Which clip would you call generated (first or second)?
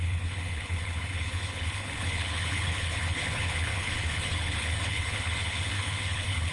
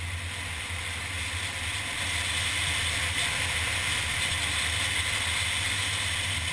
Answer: first